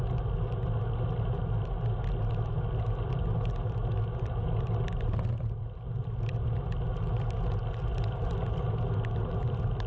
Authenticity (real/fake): real